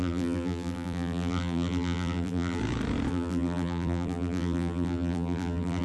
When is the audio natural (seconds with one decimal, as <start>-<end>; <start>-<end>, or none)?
2.6-3.1